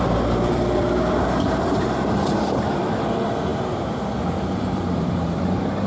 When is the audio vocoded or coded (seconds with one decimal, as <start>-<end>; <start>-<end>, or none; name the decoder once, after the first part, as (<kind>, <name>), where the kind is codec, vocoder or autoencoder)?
0.0-5.9 (vocoder, BigVGAN v2)